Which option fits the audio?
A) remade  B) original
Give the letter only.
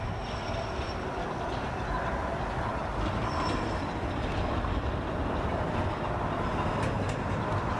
B